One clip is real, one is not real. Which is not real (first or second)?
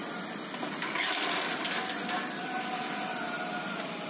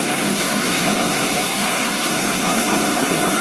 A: second